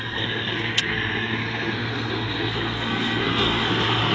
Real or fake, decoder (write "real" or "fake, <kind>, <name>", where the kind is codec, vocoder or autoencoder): fake, codec, SNAC